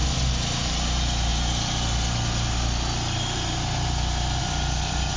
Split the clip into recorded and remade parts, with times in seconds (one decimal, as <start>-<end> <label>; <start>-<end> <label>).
0.0-5.2 recorded